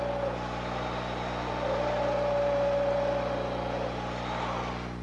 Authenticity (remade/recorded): recorded